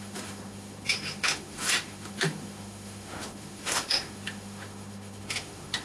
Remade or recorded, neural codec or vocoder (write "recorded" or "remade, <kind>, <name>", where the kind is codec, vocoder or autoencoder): remade, autoencoder, DAC-VAE